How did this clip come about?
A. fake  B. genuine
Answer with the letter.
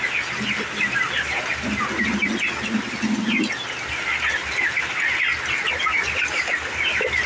B